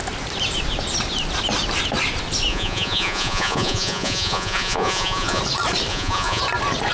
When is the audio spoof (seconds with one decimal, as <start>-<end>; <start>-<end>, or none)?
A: 2.5-5.4; 5.9-6.4